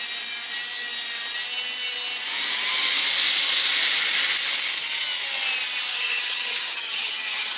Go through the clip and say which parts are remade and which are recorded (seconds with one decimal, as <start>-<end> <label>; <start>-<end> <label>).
0.0-5.9 recorded; 5.9-7.6 remade